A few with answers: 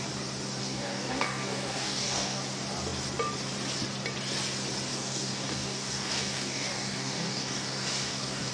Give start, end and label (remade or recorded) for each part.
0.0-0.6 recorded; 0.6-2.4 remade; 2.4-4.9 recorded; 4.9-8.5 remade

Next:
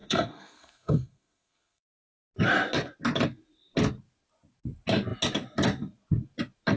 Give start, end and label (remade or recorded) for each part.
0.0-1.8 remade; 1.8-6.8 recorded

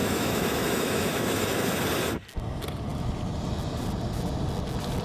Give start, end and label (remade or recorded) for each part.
0.0-1.4 remade; 1.4-5.0 recorded

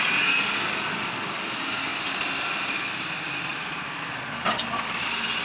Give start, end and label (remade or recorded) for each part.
0.0-5.4 recorded